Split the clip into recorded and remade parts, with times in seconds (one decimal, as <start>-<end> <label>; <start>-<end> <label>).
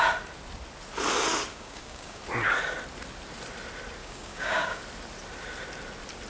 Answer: 0.0-1.5 recorded; 1.5-2.2 remade; 2.2-4.0 recorded; 4.0-4.8 remade; 4.8-6.3 recorded